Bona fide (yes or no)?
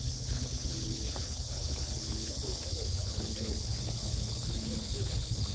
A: no